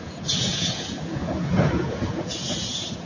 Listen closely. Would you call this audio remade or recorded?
remade